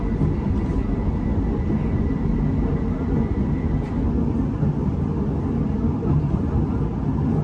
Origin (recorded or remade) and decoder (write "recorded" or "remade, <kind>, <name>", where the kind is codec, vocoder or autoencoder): recorded